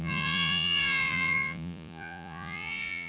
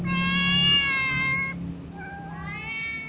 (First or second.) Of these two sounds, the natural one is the second